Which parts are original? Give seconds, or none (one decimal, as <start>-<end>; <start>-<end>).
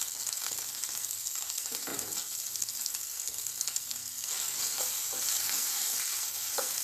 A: none